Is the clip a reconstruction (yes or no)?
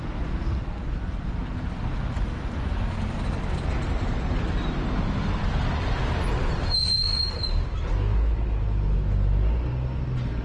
no